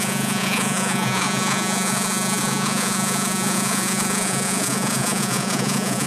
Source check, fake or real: fake